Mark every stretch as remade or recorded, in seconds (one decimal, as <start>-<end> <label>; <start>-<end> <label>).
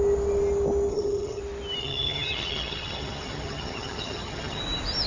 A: 0.0-0.9 recorded; 0.9-1.4 remade; 1.4-1.8 recorded; 1.8-4.6 remade; 4.6-5.1 recorded